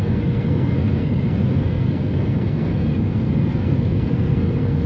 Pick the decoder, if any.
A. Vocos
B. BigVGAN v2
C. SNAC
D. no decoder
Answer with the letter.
C